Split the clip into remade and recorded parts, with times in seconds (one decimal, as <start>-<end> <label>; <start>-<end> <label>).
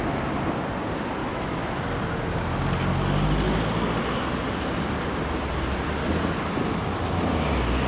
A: 0.0-1.2 recorded; 1.2-1.8 remade; 1.8-7.9 recorded